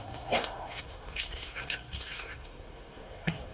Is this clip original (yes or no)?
no